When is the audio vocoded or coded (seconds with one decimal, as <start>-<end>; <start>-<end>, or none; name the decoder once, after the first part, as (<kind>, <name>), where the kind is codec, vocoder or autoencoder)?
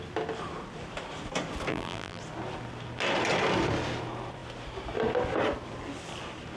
1.7-2.2 (vocoder, BigVGAN v2)